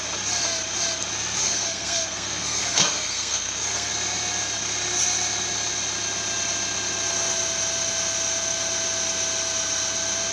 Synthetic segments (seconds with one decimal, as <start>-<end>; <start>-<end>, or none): 1.4-3.9